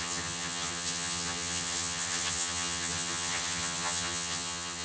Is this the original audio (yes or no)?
no